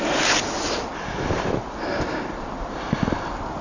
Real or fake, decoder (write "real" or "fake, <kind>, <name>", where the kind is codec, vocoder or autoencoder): real